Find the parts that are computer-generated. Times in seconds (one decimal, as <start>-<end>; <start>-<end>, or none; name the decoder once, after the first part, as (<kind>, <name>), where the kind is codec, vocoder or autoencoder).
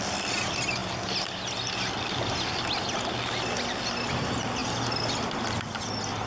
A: none